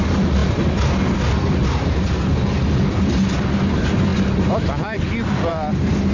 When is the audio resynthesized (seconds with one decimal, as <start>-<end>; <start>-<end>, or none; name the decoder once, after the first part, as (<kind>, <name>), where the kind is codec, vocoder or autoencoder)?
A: 0.0-0.4 (vocoder, BigVGAN v2); 2.8-6.1